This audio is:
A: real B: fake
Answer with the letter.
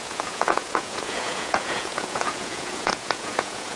B